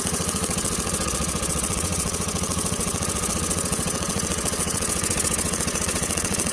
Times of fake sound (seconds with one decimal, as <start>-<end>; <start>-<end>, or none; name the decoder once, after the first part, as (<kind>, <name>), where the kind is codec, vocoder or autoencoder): 0.0-6.5 (vocoder, WaveNeXt)

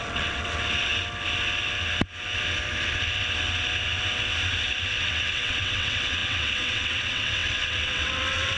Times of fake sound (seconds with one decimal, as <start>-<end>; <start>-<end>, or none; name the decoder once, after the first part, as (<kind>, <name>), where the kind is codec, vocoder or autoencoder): 0.0-0.9 (vocoder, WaveNeXt); 5.0-8.6

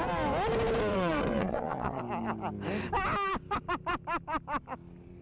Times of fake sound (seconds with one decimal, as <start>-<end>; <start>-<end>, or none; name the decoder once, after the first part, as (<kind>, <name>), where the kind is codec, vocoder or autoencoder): 0.9-2.0 (vocoder, WaveNeXt)

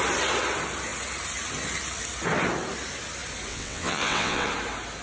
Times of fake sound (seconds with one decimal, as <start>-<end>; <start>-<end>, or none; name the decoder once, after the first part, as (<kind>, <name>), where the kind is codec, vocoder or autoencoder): 3.5-4.5 (vocoder, WaveNeXt)